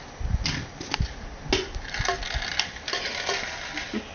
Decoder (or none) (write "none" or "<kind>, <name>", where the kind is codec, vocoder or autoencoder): none